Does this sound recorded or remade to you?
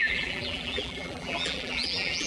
remade